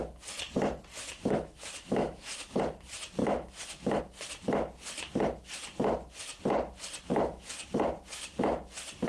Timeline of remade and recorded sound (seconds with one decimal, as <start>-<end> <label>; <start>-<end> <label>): 0.0-0.9 recorded; 0.9-2.6 remade; 2.6-3.2 recorded; 3.2-4.0 remade; 4.0-7.1 recorded; 7.1-7.6 remade; 7.6-9.1 recorded